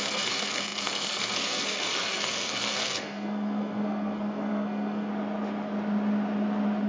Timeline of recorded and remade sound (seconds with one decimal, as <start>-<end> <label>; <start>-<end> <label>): 0.0-5.1 remade; 5.1-6.9 recorded